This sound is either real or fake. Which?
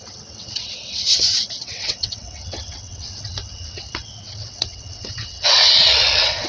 fake